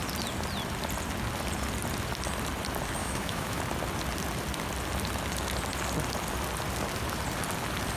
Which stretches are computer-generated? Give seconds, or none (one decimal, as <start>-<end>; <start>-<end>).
3.0-3.6